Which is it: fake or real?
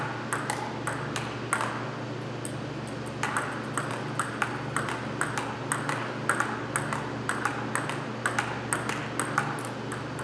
real